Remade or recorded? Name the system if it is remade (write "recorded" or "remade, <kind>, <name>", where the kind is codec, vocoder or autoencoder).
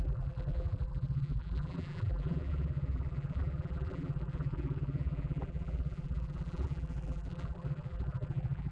remade, vocoder, BigVGAN v2